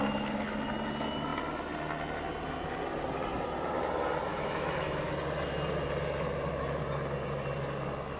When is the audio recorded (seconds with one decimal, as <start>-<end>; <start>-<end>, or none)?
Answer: 0.0-4.3; 5.1-8.2